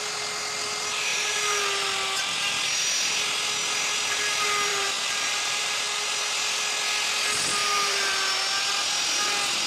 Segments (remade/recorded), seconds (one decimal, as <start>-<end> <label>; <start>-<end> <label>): 0.0-1.1 recorded; 1.1-1.6 remade; 1.6-4.7 recorded; 4.7-6.1 remade; 6.1-7.6 recorded; 7.6-8.1 remade; 8.1-9.7 recorded

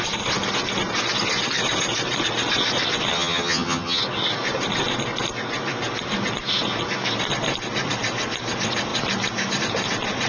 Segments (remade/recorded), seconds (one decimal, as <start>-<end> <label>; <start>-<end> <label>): 0.0-3.1 recorded; 3.1-4.0 remade; 4.0-10.3 recorded

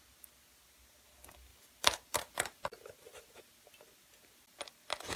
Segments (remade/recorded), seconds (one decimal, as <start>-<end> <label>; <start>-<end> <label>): 0.0-1.5 recorded; 1.5-4.6 remade; 4.6-5.2 recorded